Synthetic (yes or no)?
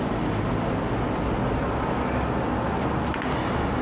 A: no